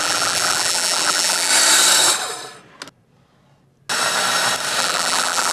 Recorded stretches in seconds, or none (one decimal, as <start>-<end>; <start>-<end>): 1.5-4.8